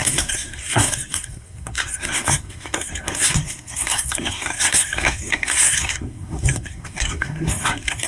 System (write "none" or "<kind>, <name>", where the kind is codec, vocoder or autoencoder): codec, SNAC